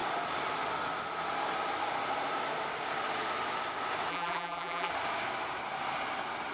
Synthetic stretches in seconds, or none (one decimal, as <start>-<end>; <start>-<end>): 4.1-4.9